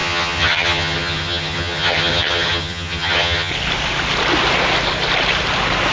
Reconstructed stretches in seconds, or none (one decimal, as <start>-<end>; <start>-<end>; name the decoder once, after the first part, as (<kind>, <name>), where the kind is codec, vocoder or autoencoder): 0.0-3.5 (vocoder, HiFi-GAN)